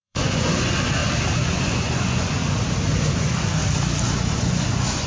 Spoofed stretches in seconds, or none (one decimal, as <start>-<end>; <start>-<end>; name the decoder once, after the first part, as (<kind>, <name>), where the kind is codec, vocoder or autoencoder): 0.0-1.0 (vocoder, Vocos); 1.5-2.4; 3.1-3.6; 4.3-5.1